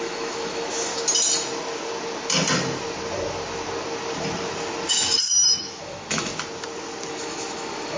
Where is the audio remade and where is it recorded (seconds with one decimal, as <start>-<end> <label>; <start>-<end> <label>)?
0.0-0.9 remade; 0.9-4.9 recorded; 4.9-6.3 remade; 6.3-7.1 recorded; 7.1-8.0 remade